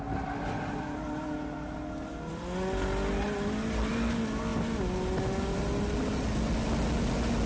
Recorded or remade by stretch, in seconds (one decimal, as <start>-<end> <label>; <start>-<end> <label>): 0.0-7.5 recorded